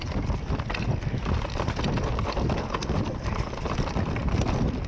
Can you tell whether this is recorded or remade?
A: recorded